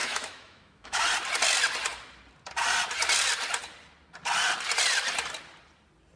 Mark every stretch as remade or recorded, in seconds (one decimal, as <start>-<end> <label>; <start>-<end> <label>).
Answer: 0.0-1.0 remade; 1.0-6.2 recorded